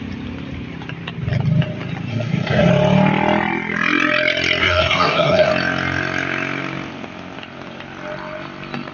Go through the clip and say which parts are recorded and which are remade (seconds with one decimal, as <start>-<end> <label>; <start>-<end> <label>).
0.0-2.1 recorded; 2.1-2.7 remade; 2.7-4.6 recorded; 4.6-5.5 remade; 5.5-8.9 recorded